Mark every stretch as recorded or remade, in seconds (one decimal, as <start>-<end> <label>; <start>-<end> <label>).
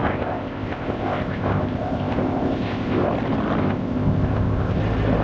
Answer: 0.0-3.1 remade; 3.1-3.6 recorded; 3.6-4.8 remade; 4.8-5.2 recorded